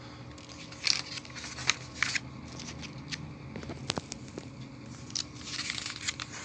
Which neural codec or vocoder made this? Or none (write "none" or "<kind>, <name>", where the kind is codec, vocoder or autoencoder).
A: none